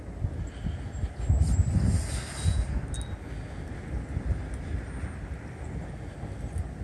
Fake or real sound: real